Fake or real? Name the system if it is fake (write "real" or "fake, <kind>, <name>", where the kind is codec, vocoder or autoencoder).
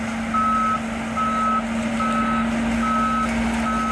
real